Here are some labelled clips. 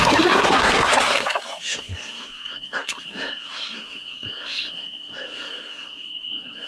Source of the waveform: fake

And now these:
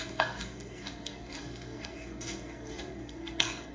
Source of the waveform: fake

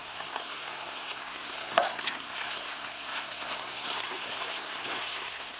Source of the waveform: fake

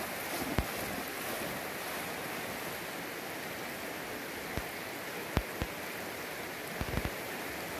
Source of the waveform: real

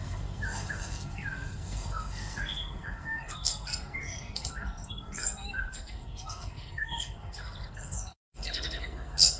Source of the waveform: fake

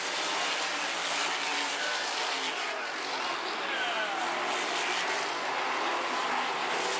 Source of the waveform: real